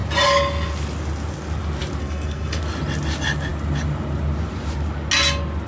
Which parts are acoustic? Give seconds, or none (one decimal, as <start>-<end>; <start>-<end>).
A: 0.0-2.0; 2.6-5.7